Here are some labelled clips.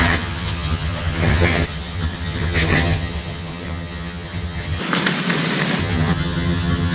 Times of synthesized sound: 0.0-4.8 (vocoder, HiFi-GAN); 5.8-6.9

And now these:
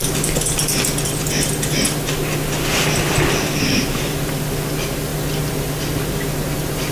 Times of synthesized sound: none